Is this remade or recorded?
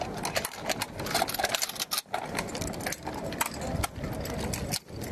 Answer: recorded